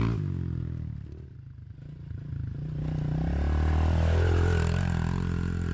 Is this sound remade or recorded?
recorded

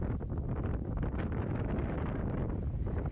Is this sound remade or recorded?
remade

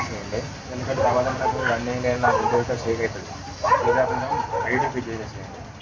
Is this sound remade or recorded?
recorded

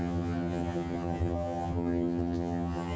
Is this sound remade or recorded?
remade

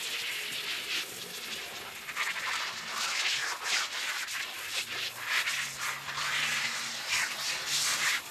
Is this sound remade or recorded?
recorded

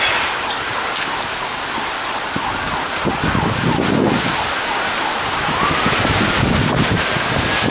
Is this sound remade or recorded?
recorded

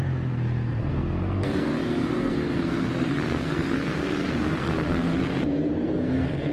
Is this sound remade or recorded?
remade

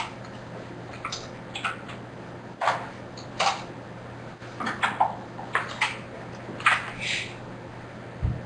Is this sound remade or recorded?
recorded